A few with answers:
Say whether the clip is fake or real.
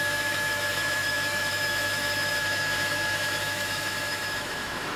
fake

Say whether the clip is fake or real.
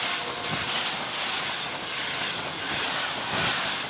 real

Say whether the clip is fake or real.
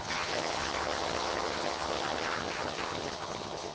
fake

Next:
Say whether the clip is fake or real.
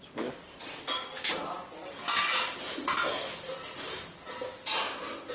real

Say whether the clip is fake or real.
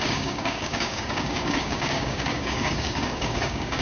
fake